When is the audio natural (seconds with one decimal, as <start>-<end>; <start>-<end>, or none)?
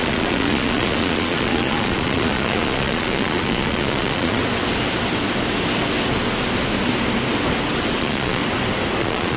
4.4-8.0; 8.4-9.0